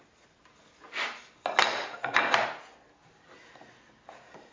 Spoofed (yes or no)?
no